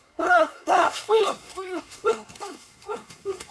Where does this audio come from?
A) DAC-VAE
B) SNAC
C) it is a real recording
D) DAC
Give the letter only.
B